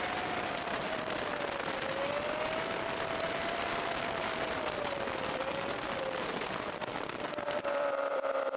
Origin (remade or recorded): remade